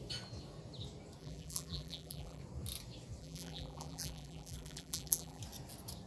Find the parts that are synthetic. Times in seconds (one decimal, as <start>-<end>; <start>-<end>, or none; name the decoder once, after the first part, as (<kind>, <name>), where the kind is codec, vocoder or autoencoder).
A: 1.2-2.4 (vocoder, BigVGAN v2); 3.2-5.4